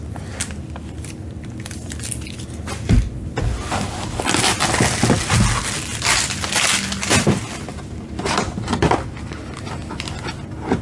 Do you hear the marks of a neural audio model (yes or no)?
no